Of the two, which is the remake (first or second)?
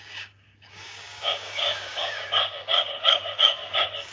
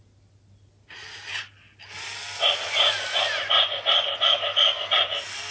first